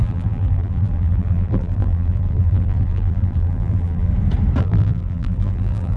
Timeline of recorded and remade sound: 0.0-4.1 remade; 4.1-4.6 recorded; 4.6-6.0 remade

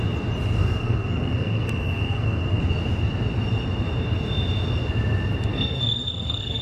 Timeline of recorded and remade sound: 0.0-0.6 recorded; 0.6-2.6 remade; 2.6-5.5 recorded; 5.5-6.6 remade

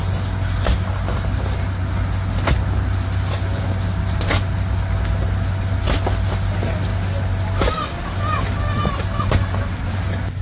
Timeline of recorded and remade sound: 0.0-10.4 recorded

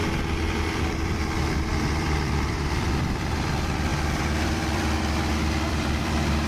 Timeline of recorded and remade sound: 0.0-0.6 recorded; 0.6-6.5 remade

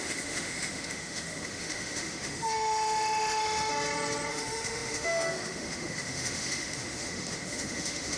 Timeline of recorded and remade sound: 0.0-3.7 remade; 3.7-4.3 recorded; 4.3-8.2 remade